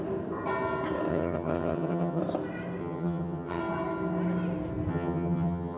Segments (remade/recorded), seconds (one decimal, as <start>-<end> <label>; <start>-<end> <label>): 0.0-1.1 recorded; 1.1-2.2 remade; 2.2-2.8 recorded; 2.8-3.6 remade; 3.6-4.9 recorded; 4.9-5.8 remade